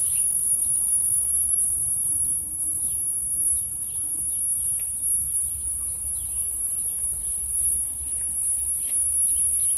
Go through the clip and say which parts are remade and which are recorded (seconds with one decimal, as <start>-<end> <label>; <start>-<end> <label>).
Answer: 0.0-1.6 remade; 1.6-9.8 recorded